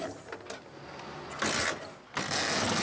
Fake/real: real